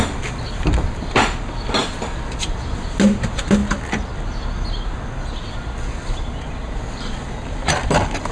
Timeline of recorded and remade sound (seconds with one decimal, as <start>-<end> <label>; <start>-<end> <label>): 0.0-8.3 recorded